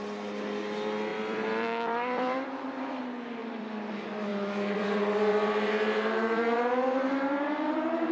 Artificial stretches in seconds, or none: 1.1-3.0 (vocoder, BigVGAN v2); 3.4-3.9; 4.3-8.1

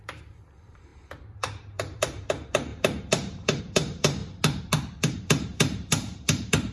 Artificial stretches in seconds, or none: 0.0-4.2 (vocoder, BigVGAN v2); 5.0-6.7

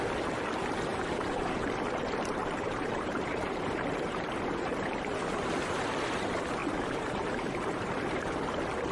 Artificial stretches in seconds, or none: 2.4-5.4 (vocoder, BigVGAN v2); 6.6-8.4

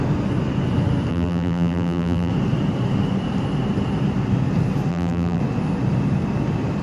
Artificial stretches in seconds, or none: 1.1-2.3 (vocoder, BigVGAN v2); 4.9-5.4

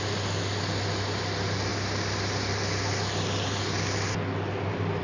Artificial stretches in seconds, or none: 1.7-5.0 (vocoder, BigVGAN v2)

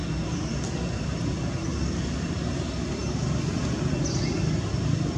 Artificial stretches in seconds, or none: 1.7-2.3 (vocoder, BigVGAN v2); 3.0-3.9